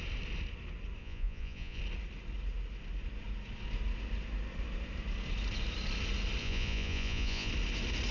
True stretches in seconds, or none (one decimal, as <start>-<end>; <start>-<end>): 0.0-1.0; 1.8-6.4; 7.5-8.1

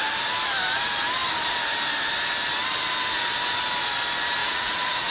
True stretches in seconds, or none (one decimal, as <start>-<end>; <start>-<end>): 0.0-4.4